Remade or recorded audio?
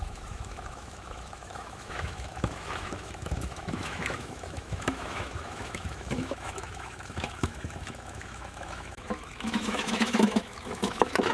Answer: remade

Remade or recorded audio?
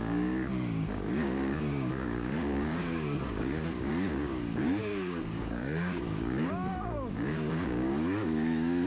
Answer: remade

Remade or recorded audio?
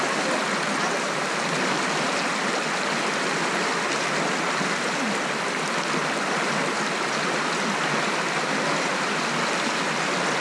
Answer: recorded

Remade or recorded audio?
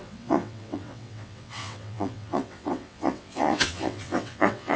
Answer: remade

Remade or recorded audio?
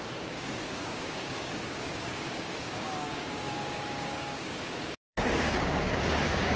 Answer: remade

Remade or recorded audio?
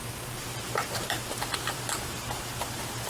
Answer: remade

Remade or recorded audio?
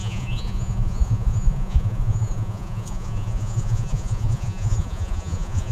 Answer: remade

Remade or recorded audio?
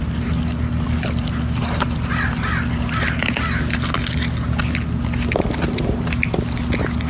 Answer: recorded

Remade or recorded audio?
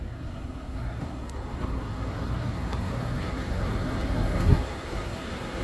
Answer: remade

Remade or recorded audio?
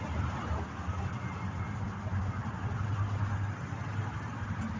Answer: recorded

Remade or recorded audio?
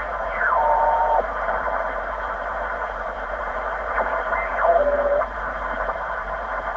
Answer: remade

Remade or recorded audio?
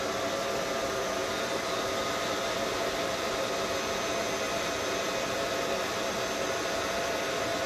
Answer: recorded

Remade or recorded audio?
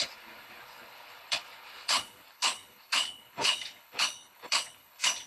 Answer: remade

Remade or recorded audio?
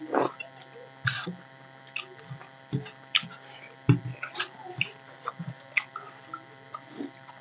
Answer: recorded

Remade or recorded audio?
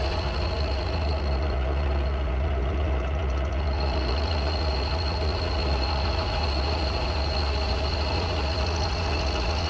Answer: remade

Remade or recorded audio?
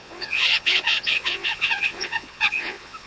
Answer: remade